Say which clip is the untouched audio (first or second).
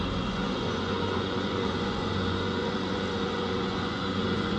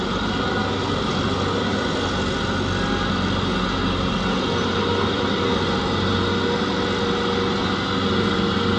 second